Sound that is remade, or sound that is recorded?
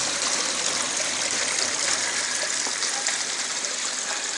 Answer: recorded